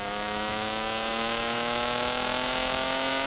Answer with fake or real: fake